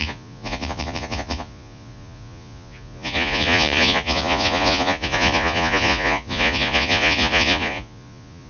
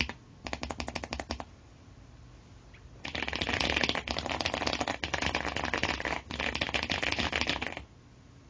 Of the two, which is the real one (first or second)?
second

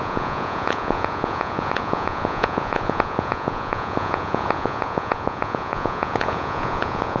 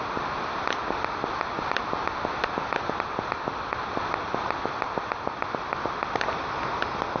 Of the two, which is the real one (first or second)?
second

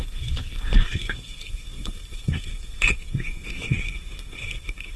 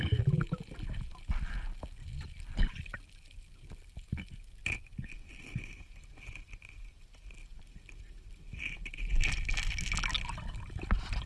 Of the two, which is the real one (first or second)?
second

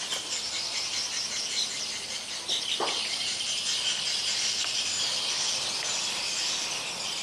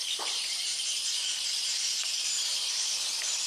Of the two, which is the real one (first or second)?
first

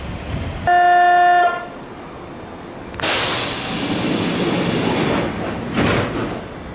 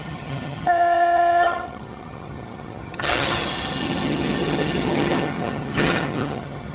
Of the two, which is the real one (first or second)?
first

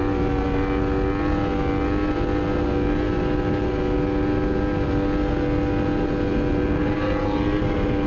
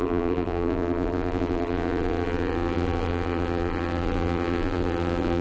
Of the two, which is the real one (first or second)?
first